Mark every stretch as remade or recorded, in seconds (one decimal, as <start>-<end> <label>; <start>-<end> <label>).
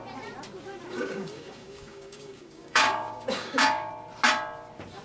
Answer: 0.0-0.9 recorded; 0.9-3.9 remade; 3.9-5.0 recorded